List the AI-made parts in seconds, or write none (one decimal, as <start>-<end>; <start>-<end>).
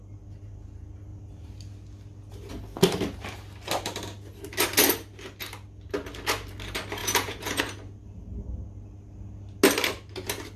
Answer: 7.0-7.6